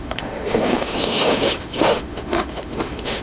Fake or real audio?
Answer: fake